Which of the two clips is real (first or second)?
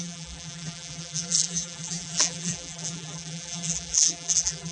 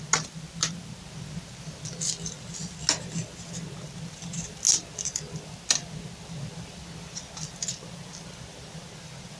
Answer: second